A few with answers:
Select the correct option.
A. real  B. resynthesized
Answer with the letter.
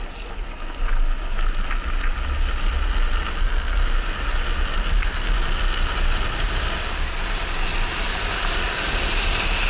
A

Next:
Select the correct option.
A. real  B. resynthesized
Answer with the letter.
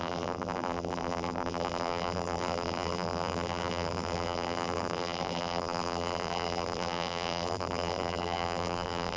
B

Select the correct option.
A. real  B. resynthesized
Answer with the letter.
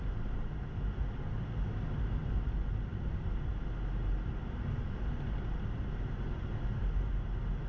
A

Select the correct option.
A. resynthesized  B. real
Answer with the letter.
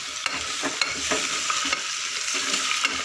B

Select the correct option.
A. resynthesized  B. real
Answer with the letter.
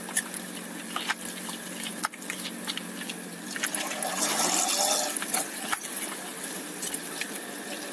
B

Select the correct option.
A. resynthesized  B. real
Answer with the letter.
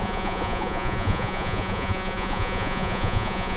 A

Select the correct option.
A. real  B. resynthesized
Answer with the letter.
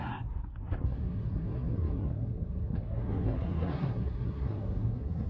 B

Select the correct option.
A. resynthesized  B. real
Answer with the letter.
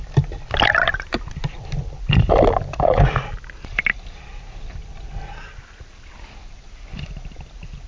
B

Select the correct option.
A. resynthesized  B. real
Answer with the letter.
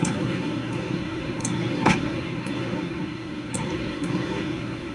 A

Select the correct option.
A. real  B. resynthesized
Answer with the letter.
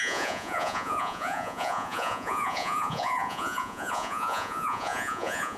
B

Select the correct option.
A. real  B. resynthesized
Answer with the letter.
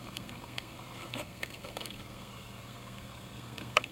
B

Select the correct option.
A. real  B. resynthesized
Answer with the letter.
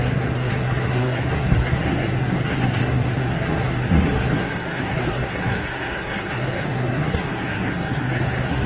B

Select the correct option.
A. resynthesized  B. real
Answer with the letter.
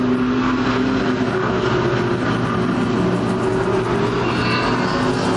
B